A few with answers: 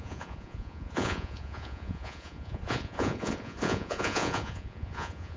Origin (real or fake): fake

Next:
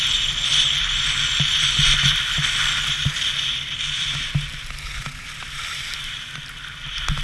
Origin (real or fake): real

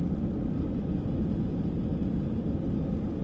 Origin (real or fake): fake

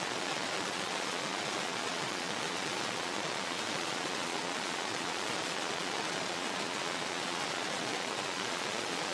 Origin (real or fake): fake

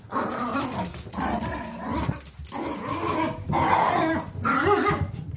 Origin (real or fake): real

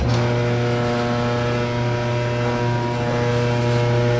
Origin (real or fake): real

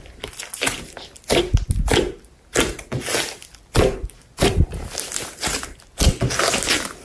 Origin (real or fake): real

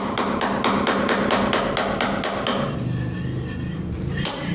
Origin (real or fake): real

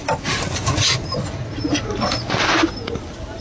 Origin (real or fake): real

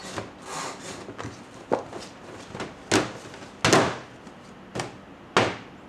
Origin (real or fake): real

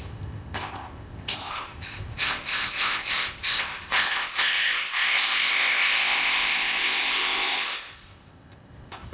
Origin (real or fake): fake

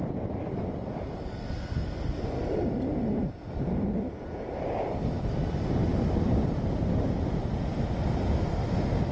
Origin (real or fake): real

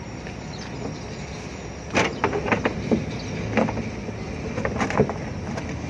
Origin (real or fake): real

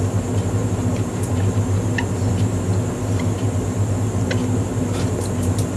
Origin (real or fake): real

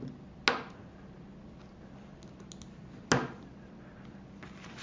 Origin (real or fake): real